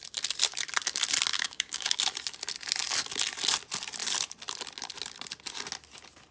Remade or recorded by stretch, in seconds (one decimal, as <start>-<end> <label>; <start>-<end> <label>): 0.0-1.3 recorded; 1.3-2.0 remade; 2.0-6.3 recorded

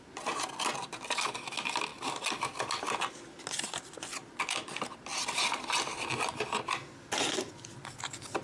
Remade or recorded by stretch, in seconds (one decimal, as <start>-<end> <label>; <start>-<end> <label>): 0.0-8.4 recorded

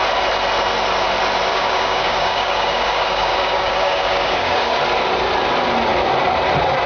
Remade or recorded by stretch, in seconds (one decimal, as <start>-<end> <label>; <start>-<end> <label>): 0.0-1.5 recorded; 1.5-4.8 remade; 4.8-6.9 recorded